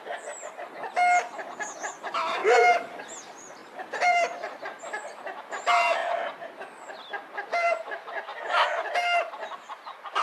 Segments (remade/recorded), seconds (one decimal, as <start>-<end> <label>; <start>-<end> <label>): 0.0-2.4 recorded; 2.4-3.0 remade; 3.0-3.6 recorded; 3.6-4.6 remade; 4.6-10.2 recorded